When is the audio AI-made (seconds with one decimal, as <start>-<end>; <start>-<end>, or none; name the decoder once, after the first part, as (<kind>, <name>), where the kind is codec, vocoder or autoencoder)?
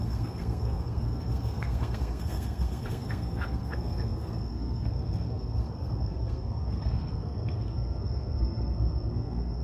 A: 0.0-9.6 (codec, SNAC)